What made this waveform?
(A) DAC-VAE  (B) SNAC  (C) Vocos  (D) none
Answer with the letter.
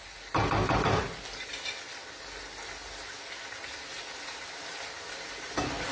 D